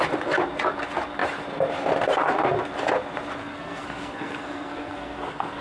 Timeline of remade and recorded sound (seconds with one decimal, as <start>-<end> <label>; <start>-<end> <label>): 0.0-3.4 recorded; 3.4-5.6 remade